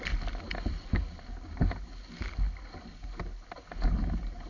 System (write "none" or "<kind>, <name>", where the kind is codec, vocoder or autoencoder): none